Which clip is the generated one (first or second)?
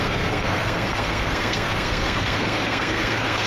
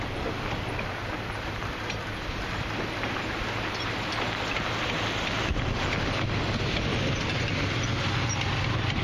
first